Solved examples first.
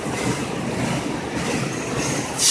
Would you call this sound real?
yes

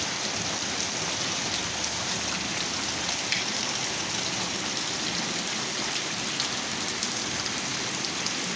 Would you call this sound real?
yes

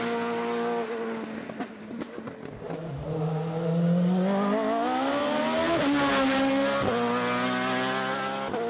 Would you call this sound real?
yes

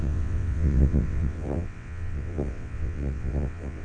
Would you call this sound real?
no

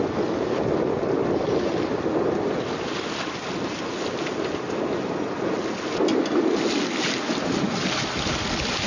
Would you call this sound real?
yes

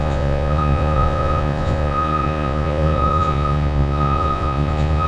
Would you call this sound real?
no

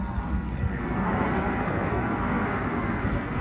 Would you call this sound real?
no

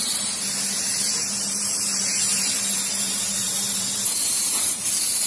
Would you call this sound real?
no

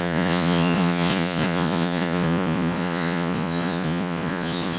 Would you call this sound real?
no